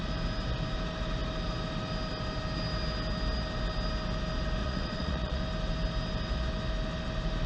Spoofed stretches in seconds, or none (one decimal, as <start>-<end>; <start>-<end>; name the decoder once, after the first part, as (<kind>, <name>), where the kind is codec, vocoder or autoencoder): 4.6-5.4 (vocoder, Vocos)